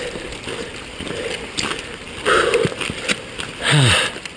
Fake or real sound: real